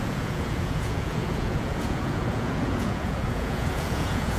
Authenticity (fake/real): fake